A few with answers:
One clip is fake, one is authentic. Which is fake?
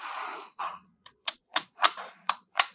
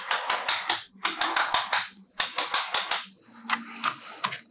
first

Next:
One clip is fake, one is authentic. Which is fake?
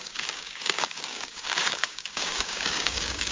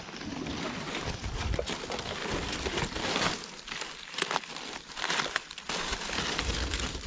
first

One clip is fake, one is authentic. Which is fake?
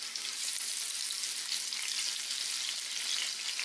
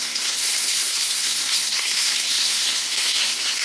second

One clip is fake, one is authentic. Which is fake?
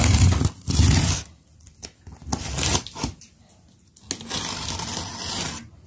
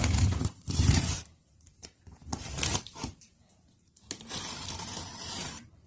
second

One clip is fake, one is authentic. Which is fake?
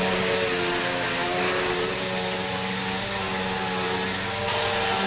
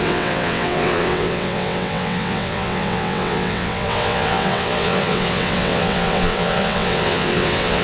second